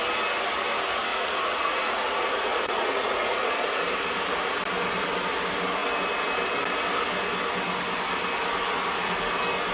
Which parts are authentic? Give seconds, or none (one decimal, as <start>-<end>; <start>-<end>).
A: 0.0-1.1; 3.5-9.7